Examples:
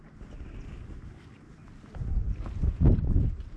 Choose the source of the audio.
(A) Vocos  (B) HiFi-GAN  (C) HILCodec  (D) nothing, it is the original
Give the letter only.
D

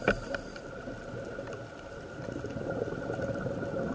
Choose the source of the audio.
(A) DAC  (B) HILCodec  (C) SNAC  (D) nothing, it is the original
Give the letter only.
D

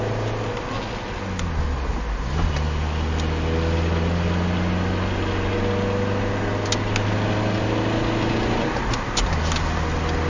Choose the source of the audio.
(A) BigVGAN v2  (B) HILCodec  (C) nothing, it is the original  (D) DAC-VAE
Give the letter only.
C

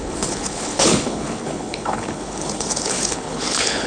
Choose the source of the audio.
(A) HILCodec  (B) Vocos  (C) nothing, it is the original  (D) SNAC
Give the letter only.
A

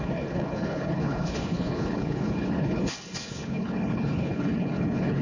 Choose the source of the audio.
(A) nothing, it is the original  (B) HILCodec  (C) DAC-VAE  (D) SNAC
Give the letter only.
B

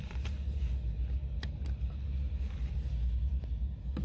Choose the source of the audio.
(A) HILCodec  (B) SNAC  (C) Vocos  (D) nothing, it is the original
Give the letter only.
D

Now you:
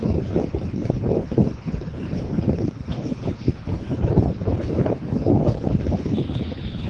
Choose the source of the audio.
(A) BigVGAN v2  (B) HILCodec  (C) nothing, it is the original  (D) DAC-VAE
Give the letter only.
B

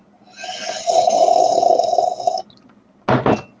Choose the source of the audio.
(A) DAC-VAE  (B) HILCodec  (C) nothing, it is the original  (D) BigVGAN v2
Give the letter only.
C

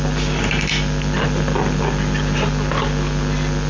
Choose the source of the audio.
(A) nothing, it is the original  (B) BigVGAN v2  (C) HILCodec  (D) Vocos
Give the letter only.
A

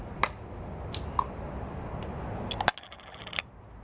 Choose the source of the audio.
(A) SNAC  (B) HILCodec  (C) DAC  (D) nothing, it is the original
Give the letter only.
D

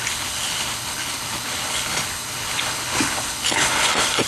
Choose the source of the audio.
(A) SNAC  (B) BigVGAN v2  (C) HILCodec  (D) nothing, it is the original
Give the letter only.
C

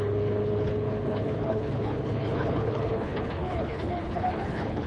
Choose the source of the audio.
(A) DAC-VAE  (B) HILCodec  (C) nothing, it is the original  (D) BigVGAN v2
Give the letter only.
B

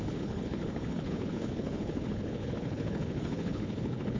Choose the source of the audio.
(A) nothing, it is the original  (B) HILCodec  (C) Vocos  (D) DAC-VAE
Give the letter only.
B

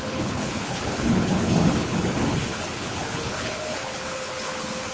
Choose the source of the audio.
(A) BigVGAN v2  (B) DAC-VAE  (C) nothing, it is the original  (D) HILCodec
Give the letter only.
D